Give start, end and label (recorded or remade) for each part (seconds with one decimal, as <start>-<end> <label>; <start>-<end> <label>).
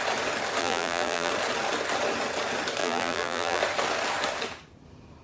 0.0-0.6 recorded; 0.6-1.3 remade; 1.3-2.8 recorded; 2.8-3.6 remade; 3.6-5.2 recorded